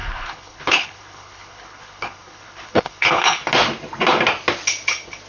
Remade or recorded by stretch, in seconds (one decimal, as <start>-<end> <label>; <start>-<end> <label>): 0.0-3.4 remade; 3.4-5.3 recorded